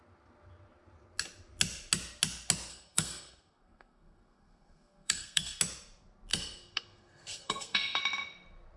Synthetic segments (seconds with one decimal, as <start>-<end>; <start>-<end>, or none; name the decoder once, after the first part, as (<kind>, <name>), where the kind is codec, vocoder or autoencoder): 2.7-5.6 (codec, SNAC); 6.3-8.0